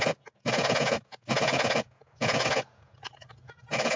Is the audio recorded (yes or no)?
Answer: no